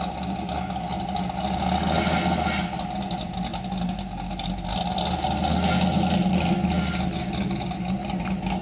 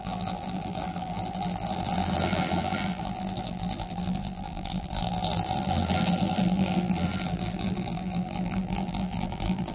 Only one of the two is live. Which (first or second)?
first